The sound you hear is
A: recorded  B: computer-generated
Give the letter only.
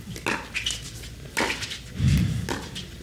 A